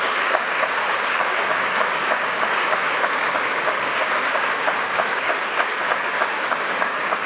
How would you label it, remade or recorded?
remade